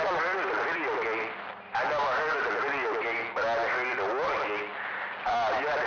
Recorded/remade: recorded